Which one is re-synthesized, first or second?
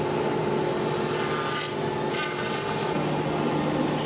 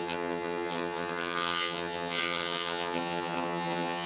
second